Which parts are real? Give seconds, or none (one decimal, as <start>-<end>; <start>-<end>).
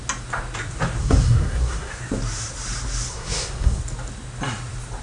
0.0-1.0; 2.0-3.1; 3.8-5.0